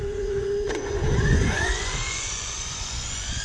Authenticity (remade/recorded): remade